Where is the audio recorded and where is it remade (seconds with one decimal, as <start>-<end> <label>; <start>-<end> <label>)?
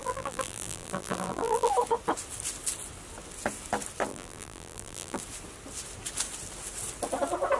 0.0-1.7 remade; 1.7-4.1 recorded; 4.1-5.2 remade; 5.2-7.6 recorded